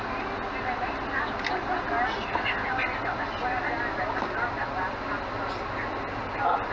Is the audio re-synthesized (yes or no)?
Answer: no